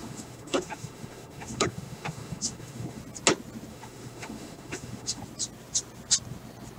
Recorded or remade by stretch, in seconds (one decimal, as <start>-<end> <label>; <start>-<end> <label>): 0.0-3.0 remade; 3.0-3.7 recorded; 3.7-5.2 remade; 5.2-6.8 recorded